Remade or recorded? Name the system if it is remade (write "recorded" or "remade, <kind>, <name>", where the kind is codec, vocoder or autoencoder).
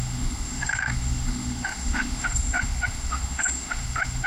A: remade, autoencoder, DAC-VAE